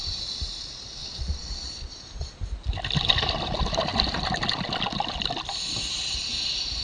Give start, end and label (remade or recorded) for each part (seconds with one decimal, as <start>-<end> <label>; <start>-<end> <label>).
0.0-1.0 recorded; 1.0-1.7 remade; 1.7-6.8 recorded